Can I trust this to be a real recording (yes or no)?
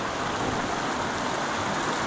yes